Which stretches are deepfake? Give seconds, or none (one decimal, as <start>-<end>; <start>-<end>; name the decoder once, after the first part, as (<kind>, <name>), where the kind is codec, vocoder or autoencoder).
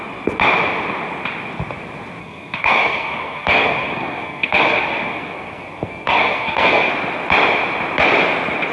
2.2-6.9 (codec, SNAC)